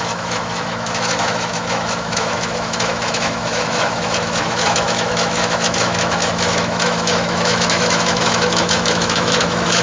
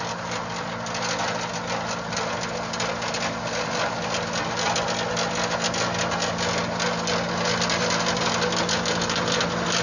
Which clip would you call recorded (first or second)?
second